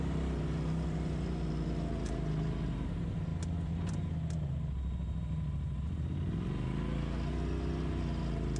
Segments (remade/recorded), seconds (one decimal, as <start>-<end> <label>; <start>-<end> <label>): 0.0-8.6 recorded